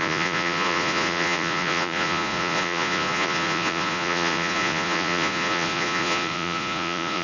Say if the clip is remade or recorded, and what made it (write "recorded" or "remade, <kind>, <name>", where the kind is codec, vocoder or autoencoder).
remade, vocoder, Vocos